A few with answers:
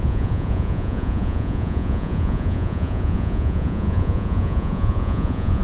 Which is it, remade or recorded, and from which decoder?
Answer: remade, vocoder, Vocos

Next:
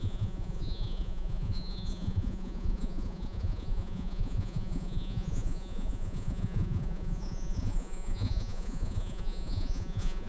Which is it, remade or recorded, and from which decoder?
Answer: remade, vocoder, Vocos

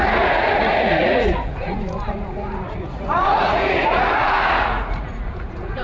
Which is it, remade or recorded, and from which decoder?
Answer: remade, vocoder, Vocos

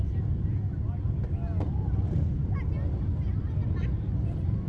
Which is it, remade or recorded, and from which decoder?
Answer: recorded